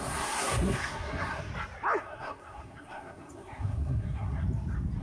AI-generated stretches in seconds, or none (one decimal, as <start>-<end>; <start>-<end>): 0.0-1.5; 2.0-4.4